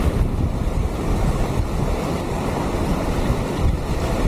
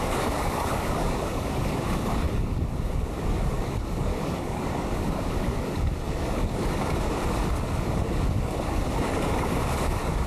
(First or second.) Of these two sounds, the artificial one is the second